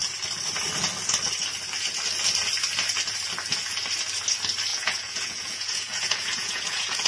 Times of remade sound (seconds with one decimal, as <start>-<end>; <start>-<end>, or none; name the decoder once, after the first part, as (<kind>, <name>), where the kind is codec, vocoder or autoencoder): 4.7-7.1 (vocoder, Vocos)